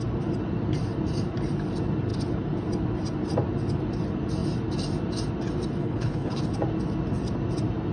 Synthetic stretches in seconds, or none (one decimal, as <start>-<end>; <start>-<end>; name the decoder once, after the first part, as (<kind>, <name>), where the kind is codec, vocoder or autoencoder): 5.8-6.4 (codec, HILCodec)